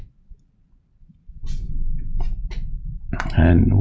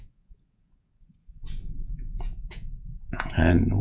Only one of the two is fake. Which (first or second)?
second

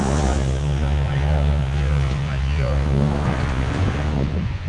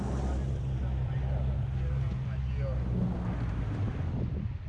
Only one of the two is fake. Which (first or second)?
first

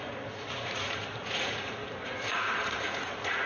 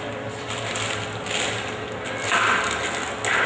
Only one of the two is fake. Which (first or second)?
first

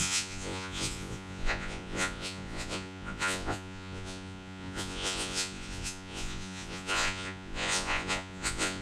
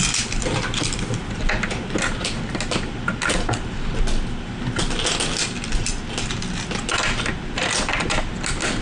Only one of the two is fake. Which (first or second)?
first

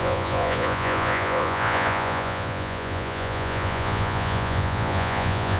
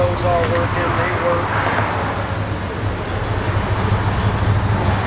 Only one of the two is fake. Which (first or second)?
first